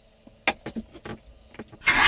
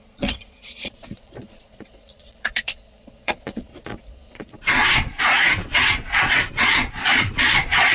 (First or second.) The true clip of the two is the first